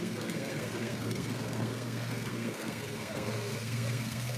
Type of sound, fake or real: fake